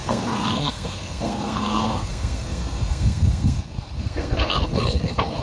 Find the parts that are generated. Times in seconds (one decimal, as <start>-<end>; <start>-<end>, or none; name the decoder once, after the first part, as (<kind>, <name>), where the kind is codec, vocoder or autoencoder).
0.0-5.4 (codec, SNAC)